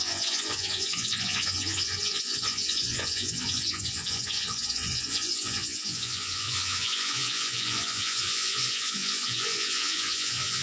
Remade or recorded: remade